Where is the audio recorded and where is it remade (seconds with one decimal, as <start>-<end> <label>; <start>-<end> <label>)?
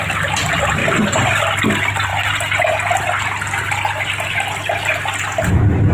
0.0-0.8 recorded; 0.8-1.4 remade; 1.4-5.9 recorded